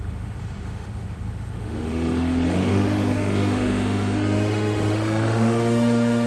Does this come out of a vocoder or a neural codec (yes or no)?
yes